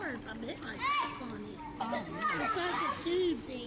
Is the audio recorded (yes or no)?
yes